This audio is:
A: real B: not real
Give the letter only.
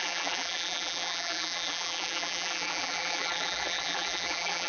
B